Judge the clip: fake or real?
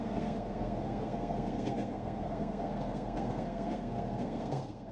fake